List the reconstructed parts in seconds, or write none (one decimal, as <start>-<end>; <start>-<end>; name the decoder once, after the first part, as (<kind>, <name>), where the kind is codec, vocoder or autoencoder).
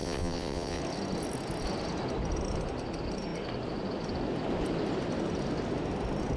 0.0-0.8 (vocoder, WaveNeXt)